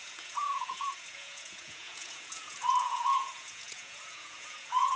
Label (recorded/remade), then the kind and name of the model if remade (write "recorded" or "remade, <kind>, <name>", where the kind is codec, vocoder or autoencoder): remade, vocoder, Vocos